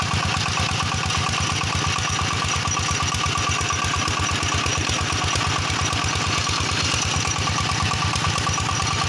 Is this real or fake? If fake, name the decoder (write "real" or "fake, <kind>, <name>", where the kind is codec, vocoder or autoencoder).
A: real